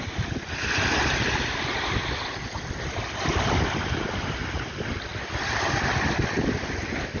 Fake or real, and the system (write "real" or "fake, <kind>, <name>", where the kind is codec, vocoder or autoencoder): real